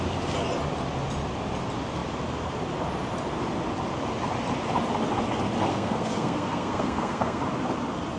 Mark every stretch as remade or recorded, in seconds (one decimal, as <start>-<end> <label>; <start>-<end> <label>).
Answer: 0.0-5.7 recorded; 5.7-7.4 remade; 7.4-8.2 recorded